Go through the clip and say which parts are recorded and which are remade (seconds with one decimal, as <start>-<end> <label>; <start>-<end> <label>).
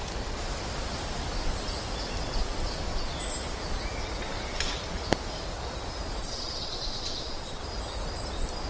0.0-6.2 recorded; 6.2-7.6 remade; 7.6-8.7 recorded